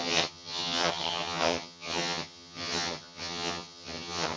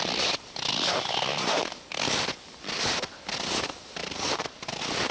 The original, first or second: second